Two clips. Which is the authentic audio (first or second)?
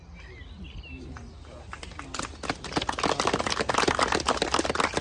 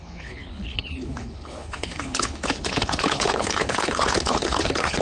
first